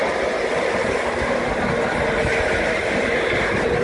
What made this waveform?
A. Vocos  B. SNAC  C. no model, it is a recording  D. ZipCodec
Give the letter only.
C